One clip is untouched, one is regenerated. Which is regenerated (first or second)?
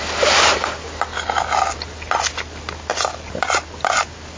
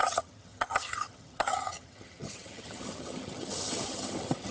second